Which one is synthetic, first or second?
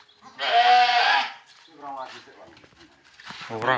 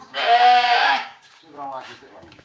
second